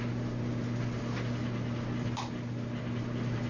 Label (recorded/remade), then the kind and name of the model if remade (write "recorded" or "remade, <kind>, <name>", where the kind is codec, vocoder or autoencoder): recorded